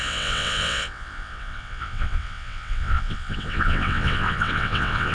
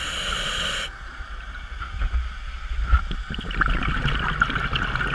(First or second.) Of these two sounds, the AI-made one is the first